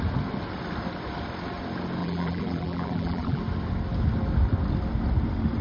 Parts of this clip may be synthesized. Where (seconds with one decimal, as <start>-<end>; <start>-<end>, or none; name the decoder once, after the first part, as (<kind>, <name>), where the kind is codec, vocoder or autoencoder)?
2.0-3.4 (vocoder, BigVGAN v2)